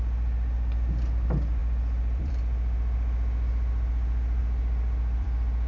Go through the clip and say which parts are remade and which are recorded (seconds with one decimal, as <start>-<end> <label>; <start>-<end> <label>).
0.0-1.6 recorded; 1.6-2.3 remade; 2.3-4.4 recorded; 4.4-5.7 remade